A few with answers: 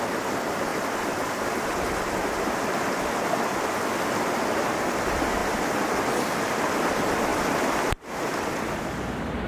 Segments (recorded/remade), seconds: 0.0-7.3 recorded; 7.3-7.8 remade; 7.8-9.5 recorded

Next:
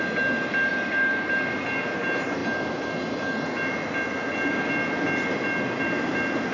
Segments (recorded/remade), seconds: 0.0-0.7 recorded; 0.7-1.4 remade; 1.4-6.5 recorded

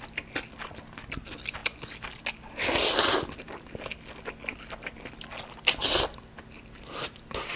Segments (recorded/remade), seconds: 0.0-7.6 recorded

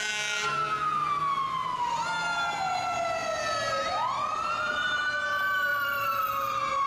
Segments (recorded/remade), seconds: 0.0-3.2 recorded; 3.2-5.0 remade; 5.0-5.7 recorded; 5.7-6.2 remade; 6.2-6.9 recorded

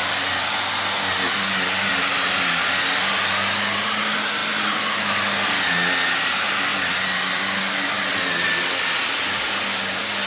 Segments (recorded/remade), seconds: 0.0-10.3 recorded

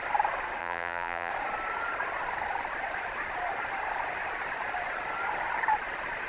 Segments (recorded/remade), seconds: 0.0-0.6 recorded; 0.6-1.3 remade; 1.3-6.3 recorded

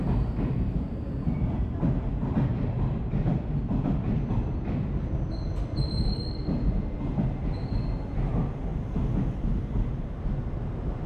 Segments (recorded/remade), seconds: 0.0-2.5 recorded; 2.5-7.7 remade; 7.7-11.1 recorded

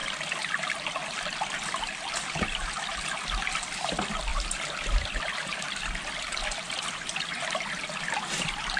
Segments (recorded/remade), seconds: 0.0-3.9 recorded; 3.9-4.3 remade; 4.3-5.0 recorded; 5.0-8.8 remade